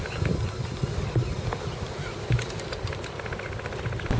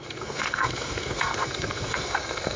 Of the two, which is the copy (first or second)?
second